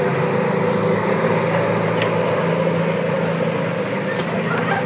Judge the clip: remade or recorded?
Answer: recorded